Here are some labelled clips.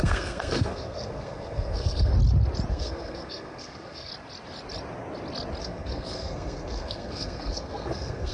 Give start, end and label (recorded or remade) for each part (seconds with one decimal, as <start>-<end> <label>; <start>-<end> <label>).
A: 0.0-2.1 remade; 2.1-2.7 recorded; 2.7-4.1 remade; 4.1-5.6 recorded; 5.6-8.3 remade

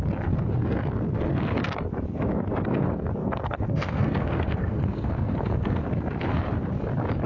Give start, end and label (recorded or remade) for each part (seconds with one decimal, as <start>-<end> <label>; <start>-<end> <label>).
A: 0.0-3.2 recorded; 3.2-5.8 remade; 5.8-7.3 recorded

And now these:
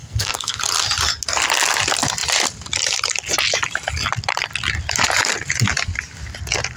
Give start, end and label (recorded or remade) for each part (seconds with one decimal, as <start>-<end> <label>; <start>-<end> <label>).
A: 0.0-0.6 remade; 0.6-6.8 recorded

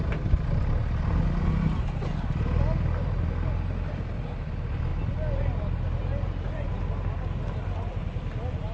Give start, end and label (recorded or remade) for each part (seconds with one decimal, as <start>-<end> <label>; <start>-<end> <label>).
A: 0.0-8.7 recorded

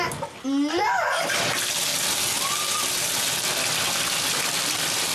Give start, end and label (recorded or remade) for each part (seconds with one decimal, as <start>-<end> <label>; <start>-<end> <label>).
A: 0.0-5.1 recorded

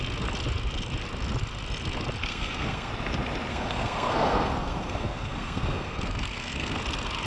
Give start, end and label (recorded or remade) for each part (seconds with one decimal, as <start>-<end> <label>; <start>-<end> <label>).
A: 0.0-2.3 recorded; 2.3-2.9 remade; 2.9-3.5 recorded; 3.5-6.8 remade; 6.8-7.3 recorded

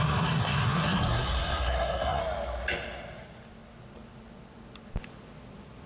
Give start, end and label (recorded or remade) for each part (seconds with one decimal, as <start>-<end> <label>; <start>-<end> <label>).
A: 0.0-2.2 remade; 2.2-5.9 recorded